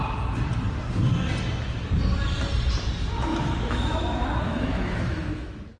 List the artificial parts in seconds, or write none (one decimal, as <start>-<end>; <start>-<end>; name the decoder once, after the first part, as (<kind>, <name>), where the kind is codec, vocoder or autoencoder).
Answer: 3.3-5.8 (autoencoder, DAC-VAE)